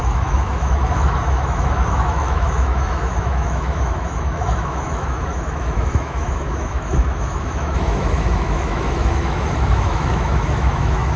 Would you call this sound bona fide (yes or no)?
no